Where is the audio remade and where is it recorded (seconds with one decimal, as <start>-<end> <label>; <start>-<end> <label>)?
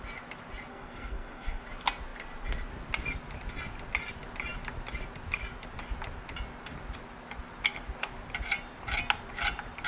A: 0.0-0.7 recorded; 0.7-1.6 remade; 1.6-9.9 recorded